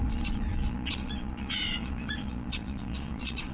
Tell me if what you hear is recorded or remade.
remade